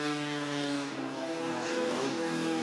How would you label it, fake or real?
fake